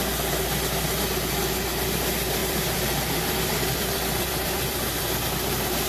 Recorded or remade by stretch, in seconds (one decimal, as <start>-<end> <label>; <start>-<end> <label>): 0.0-2.4 recorded; 2.4-5.2 remade; 5.2-5.9 recorded